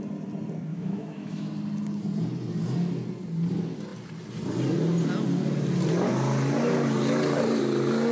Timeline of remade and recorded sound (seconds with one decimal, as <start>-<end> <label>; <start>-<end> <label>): 0.0-0.7 recorded; 0.7-1.5 remade; 1.5-8.1 recorded